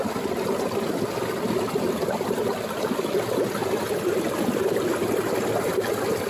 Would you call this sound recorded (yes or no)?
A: yes